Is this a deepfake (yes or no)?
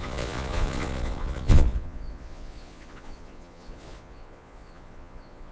yes